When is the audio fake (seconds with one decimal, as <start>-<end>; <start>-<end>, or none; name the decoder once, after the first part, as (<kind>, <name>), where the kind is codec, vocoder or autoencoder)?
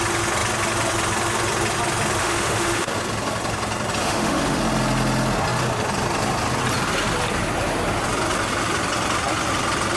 2.2-3.0 (autoencoder, DAC-VAE); 4.0-4.6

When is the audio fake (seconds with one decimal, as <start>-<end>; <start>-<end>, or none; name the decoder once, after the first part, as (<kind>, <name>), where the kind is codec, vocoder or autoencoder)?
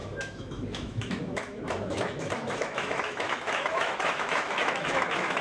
0.0-5.4 (autoencoder, DAC-VAE)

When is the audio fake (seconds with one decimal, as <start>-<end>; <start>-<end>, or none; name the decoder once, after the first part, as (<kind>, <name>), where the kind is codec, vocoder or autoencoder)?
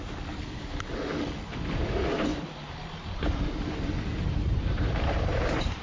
2.3-5.8 (vocoder, BigVGAN v2)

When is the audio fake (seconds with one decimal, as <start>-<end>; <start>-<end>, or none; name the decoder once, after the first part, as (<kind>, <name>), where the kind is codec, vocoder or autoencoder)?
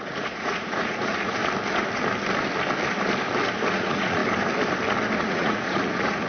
0.0-1.4 (vocoder, Vocos); 3.7-4.2; 5.2-6.3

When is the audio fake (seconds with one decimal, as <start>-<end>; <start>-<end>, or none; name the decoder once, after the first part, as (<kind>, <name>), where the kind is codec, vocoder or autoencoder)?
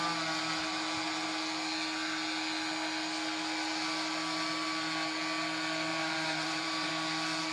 5.9-6.9 (vocoder, BigVGAN v2)